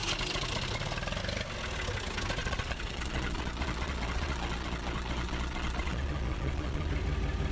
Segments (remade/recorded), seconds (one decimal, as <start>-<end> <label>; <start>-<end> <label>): 0.0-2.4 recorded; 2.4-6.9 remade; 6.9-7.5 recorded